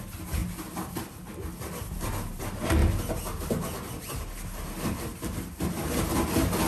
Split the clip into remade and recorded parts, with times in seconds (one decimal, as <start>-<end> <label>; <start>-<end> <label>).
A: 0.0-6.7 recorded